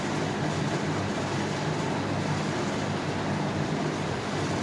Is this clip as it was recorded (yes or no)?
yes